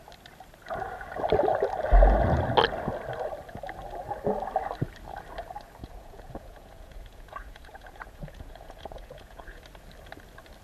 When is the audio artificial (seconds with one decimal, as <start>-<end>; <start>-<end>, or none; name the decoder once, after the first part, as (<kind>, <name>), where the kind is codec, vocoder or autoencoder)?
5.8-9.6 (vocoder, Vocos)